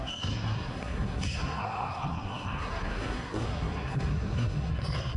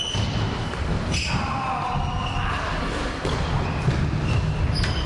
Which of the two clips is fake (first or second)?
first